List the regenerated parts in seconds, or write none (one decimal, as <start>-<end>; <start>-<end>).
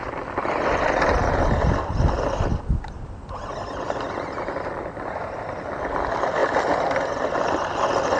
0.0-1.2; 6.4-7.4